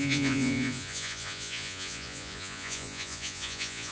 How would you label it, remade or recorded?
remade